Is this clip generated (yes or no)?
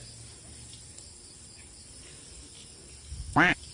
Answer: no